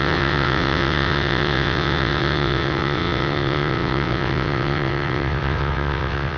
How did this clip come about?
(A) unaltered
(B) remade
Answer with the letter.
B